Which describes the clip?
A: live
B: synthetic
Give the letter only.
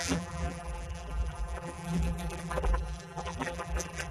B